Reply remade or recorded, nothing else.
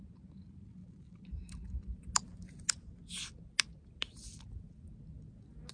recorded